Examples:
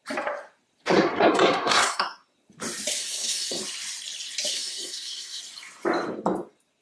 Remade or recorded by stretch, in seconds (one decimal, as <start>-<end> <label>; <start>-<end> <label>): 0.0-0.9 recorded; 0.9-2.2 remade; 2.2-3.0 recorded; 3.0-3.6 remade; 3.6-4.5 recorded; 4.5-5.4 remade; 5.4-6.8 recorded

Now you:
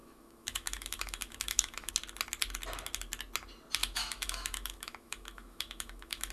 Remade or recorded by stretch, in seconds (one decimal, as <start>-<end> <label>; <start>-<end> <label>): 0.0-1.9 remade; 1.9-3.8 recorded; 3.8-6.3 remade

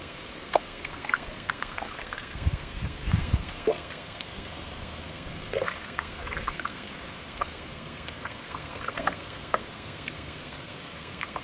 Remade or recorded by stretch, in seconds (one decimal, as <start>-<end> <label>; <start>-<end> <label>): 0.0-11.4 remade